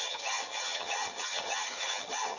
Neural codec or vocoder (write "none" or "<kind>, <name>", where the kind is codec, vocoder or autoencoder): vocoder, HiFi-GAN